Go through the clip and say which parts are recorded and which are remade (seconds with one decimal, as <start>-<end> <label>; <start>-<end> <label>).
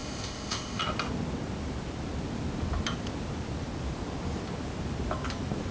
0.0-0.8 remade; 0.8-5.7 recorded